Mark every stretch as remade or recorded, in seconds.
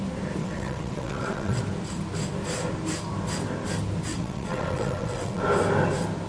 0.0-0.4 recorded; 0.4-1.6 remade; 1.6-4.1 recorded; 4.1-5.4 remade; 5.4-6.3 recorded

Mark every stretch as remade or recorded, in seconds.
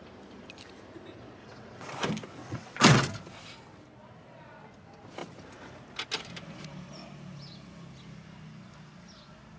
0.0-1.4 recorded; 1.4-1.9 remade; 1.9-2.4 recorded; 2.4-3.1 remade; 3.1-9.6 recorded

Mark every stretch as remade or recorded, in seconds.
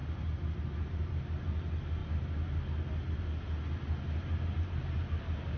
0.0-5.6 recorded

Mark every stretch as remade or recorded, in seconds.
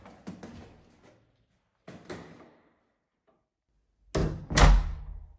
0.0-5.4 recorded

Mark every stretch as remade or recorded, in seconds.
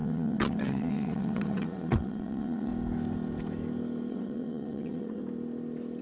0.0-2.7 remade; 2.7-4.1 recorded; 4.1-5.2 remade; 5.2-6.0 recorded